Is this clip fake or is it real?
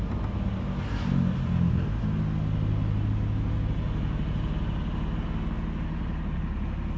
real